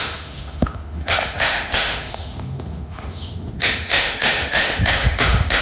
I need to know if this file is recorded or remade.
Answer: remade